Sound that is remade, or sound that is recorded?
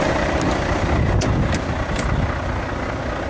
recorded